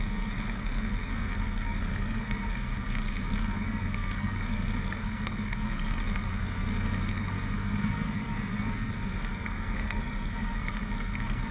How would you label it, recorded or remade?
remade